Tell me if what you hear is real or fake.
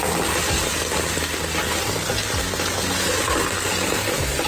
real